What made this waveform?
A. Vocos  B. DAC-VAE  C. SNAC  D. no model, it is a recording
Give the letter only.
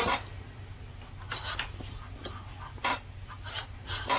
D